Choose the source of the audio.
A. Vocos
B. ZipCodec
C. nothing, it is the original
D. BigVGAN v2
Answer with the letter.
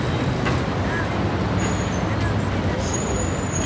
C